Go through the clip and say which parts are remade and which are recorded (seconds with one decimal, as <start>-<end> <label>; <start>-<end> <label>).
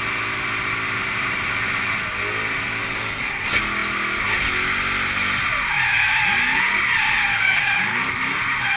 0.0-2.8 recorded; 2.8-3.3 remade; 3.3-7.3 recorded; 7.3-8.2 remade; 8.2-8.8 recorded